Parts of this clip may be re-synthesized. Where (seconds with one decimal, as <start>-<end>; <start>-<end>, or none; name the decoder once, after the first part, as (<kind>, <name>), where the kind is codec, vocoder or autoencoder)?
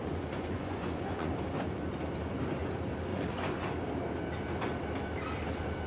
0.0-1.3 (vocoder, Vocos); 3.1-3.7